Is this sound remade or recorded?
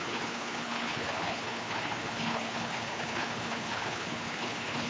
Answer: remade